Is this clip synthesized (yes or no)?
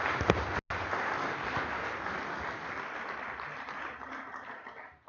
no